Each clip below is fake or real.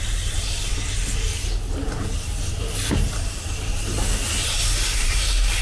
real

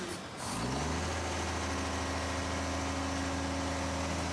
real